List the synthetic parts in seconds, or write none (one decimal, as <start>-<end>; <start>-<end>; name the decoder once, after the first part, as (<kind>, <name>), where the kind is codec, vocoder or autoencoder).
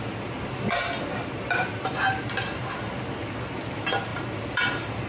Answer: none